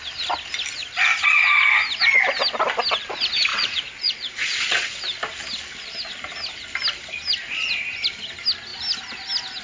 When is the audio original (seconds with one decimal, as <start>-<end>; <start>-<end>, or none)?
0.0-3.5; 5.0-9.6